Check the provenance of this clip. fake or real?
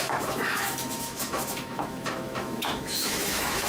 fake